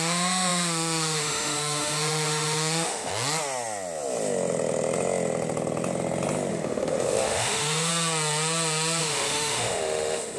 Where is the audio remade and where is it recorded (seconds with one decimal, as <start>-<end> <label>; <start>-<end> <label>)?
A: 0.0-3.1 remade; 3.1-6.5 recorded; 6.5-7.9 remade; 7.9-9.0 recorded; 9.0-10.4 remade